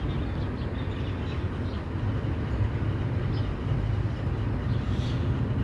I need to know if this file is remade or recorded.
recorded